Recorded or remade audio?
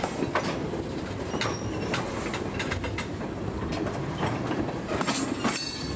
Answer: recorded